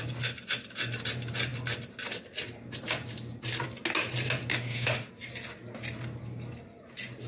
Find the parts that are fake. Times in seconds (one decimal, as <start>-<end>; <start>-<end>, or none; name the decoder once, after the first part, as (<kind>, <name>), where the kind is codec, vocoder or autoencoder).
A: 4.5-5.1 (autoencoder, DAC-VAE)